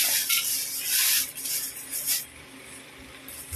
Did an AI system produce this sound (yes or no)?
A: no